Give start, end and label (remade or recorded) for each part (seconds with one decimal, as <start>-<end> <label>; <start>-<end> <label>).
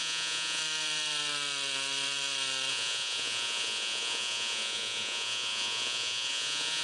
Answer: 0.0-0.6 remade; 0.6-2.7 recorded; 2.7-6.8 remade